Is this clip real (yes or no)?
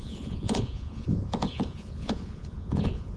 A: no